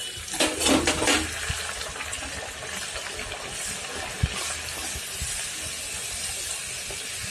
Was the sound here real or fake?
real